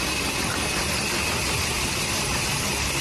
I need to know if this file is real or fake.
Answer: real